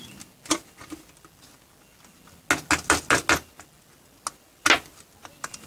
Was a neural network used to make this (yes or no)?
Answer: no